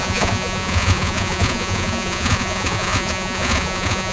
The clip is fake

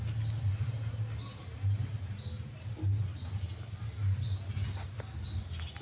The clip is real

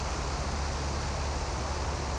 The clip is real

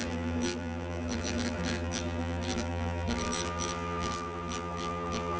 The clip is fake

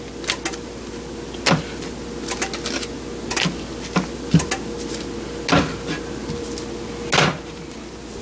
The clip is real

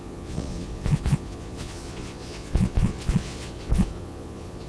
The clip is fake